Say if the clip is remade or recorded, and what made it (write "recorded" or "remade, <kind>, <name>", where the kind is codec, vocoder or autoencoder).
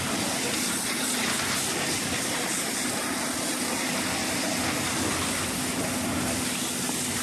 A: recorded